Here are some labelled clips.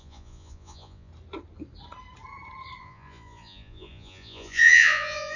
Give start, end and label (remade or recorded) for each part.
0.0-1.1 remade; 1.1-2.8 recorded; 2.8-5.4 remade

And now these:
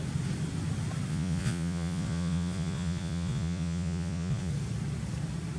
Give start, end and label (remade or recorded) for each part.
0.0-1.1 recorded; 1.1-4.5 remade; 4.5-5.6 recorded